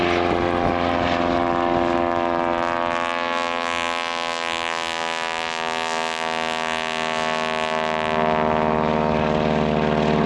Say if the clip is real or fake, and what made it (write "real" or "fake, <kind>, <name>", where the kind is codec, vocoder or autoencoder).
real